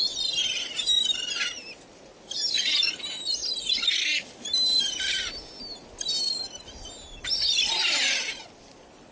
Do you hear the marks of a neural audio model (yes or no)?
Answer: no